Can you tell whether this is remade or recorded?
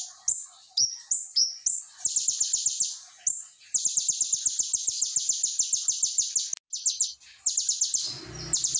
recorded